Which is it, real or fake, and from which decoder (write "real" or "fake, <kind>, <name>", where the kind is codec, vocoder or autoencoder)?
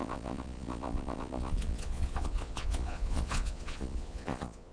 fake, vocoder, Vocos